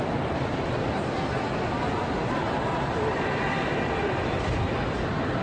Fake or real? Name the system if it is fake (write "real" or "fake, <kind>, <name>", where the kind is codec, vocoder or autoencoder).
real